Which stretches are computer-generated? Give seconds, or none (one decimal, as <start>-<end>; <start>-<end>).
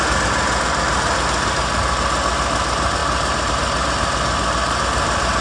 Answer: none